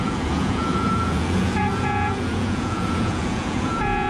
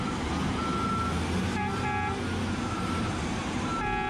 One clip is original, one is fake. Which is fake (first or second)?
first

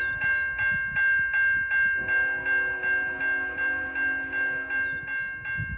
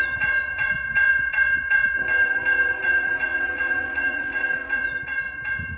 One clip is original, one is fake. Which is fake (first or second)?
second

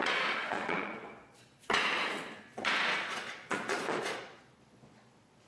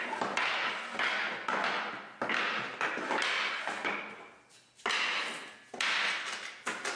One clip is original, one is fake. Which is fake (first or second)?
first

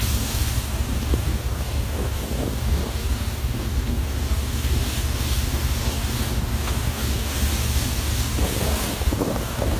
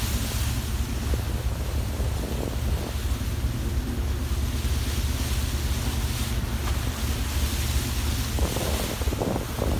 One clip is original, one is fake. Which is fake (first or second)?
first